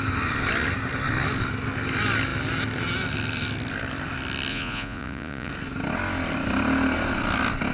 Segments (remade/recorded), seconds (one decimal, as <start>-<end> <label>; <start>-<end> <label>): 0.0-4.5 recorded; 4.5-5.5 remade; 5.5-7.7 recorded